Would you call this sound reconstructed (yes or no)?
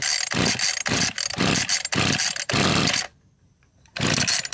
no